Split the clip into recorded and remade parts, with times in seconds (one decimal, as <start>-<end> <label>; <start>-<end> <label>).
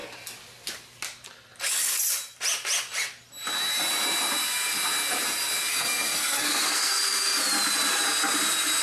0.0-5.7 recorded; 5.7-7.4 remade; 7.4-8.8 recorded